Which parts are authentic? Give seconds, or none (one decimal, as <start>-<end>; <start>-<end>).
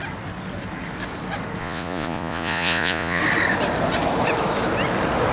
0.0-1.6; 3.2-5.3